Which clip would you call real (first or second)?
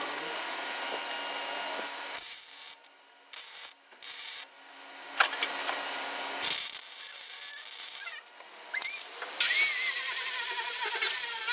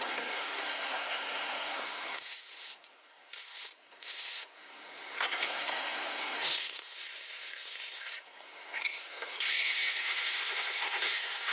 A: first